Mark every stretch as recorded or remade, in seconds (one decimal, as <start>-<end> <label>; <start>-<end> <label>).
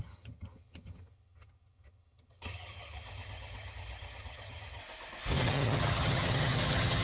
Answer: 0.0-4.8 remade; 4.8-5.4 recorded; 5.4-7.0 remade